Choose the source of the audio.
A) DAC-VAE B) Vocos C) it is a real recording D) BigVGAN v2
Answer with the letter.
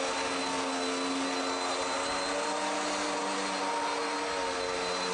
C